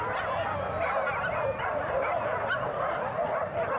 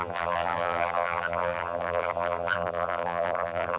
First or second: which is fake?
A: second